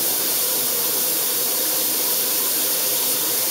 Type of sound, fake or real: fake